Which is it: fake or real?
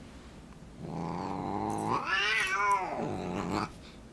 real